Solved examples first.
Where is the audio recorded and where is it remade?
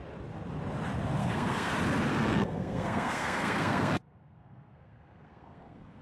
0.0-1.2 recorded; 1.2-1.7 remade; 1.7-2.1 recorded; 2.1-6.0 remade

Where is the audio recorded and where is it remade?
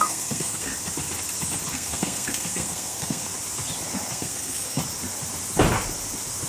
0.0-0.7 remade; 0.7-1.7 recorded; 1.7-3.3 remade; 3.3-4.1 recorded; 4.1-4.8 remade; 4.8-6.5 recorded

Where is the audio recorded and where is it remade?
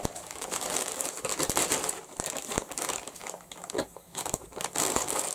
0.0-1.3 remade; 1.3-2.5 recorded; 2.5-5.3 remade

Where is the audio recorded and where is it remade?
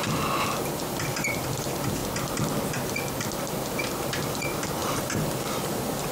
0.0-2.0 remade; 2.0-4.0 recorded; 4.0-6.1 remade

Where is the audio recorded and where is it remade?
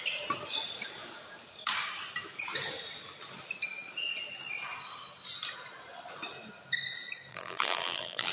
0.0-7.3 recorded; 7.3-8.3 remade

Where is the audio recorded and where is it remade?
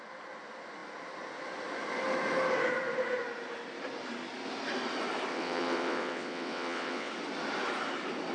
0.0-5.3 recorded; 5.3-7.1 remade; 7.1-8.3 recorded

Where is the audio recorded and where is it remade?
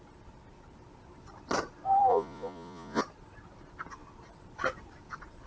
0.0-2.1 recorded; 2.1-3.0 remade; 3.0-5.5 recorded